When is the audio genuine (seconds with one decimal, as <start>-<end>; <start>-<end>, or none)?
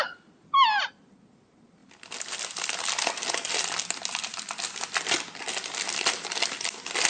0.0-7.1